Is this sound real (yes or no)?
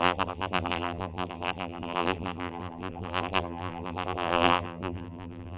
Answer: no